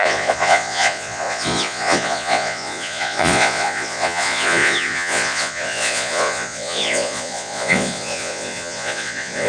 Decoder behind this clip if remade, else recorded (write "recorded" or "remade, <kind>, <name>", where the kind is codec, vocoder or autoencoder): remade, vocoder, Vocos